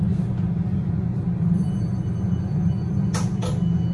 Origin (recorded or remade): recorded